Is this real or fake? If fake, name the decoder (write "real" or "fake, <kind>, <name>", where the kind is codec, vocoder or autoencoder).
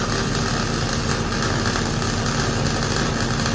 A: real